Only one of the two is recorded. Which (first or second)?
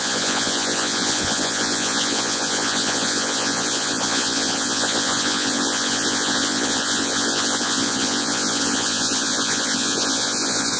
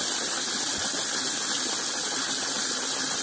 second